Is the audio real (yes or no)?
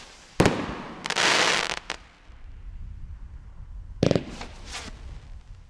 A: yes